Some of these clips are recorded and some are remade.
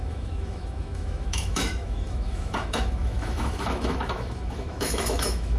remade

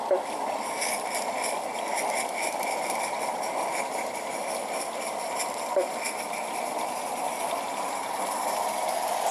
remade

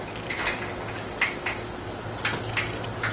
recorded